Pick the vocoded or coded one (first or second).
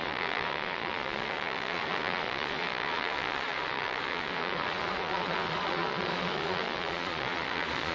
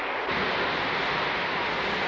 first